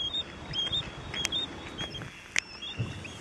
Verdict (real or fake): real